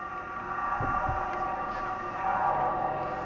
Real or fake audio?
real